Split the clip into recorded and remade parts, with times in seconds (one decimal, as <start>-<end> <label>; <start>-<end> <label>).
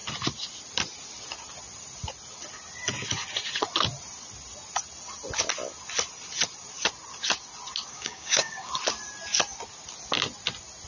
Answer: 0.0-7.9 recorded; 7.9-8.7 remade; 8.7-10.9 recorded